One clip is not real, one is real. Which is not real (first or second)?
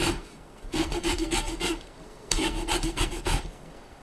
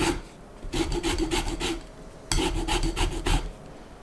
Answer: first